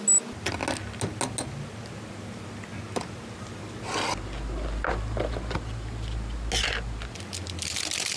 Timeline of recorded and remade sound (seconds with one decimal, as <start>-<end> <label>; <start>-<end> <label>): 0.0-8.2 recorded

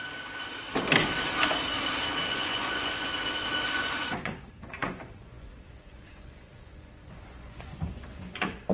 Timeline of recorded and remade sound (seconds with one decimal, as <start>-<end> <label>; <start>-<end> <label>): 0.0-2.3 recorded; 2.3-3.1 remade; 3.1-3.7 recorded; 3.7-8.7 remade

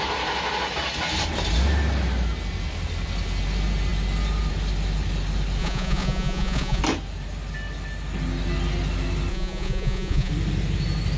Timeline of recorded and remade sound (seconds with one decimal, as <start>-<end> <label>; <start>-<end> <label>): 0.0-5.6 recorded; 5.6-6.8 remade; 6.8-9.3 recorded; 9.3-10.3 remade; 10.3-11.2 recorded

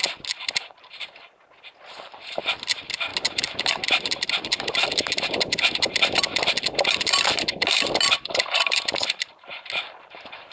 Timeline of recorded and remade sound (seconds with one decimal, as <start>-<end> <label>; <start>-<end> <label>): 0.0-10.5 recorded

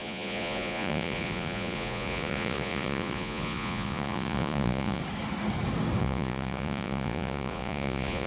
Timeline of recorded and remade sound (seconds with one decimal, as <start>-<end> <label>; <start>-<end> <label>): 0.0-5.0 remade; 5.0-6.0 recorded; 6.0-8.3 remade